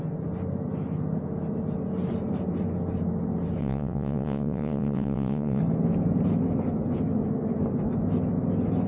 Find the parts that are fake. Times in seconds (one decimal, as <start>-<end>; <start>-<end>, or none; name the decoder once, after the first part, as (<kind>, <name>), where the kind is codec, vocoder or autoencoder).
3.6-5.6 (vocoder, WaveNeXt)